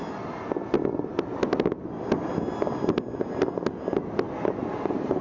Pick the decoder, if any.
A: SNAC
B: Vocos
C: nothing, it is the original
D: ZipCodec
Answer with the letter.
C